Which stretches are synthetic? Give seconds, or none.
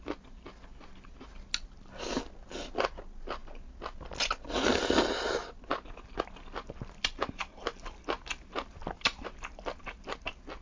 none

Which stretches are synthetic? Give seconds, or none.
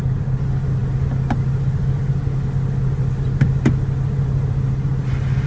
none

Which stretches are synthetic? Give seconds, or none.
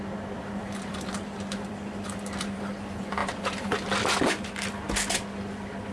0.6-2.6 (vocoder, BigVGAN v2); 3.2-4.3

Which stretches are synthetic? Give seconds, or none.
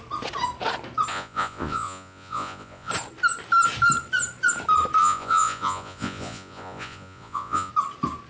1.1-2.9 (vocoder, Vocos); 5.0-7.7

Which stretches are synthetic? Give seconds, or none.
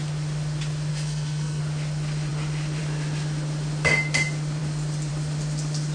0.9-1.6 (codec, SNAC)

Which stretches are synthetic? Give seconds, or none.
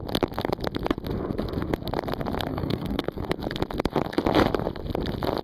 2.5-3.2 (codec, SNAC)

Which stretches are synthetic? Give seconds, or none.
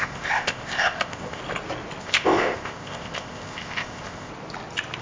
0.0-1.4 (codec, ZipCodec); 2.0-4.3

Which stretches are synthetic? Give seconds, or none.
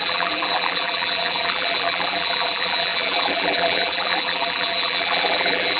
0.0-5.8 (vocoder, BigVGAN v2)